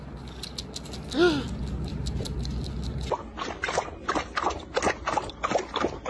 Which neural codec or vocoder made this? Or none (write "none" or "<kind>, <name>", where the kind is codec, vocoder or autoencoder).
none